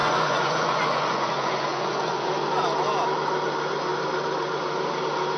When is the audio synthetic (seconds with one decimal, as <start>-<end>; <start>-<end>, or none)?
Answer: 0.0-2.3